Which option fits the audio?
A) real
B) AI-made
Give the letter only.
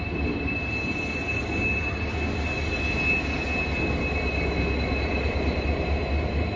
A